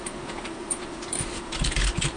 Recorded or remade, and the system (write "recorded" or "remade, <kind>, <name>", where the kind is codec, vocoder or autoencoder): remade, vocoder, BigVGAN v2